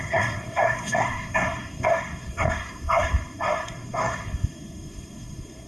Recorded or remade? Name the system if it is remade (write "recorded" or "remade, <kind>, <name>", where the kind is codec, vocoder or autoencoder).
remade, codec, SNAC